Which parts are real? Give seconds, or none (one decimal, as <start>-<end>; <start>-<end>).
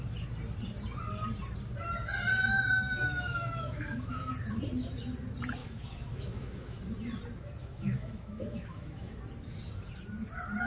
0.0-2.3; 4.3-5.6; 6.8-7.6; 9.2-10.7